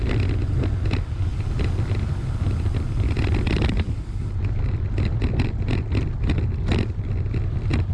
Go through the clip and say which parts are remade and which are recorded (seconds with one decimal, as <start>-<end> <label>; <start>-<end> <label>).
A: 0.0-7.9 recorded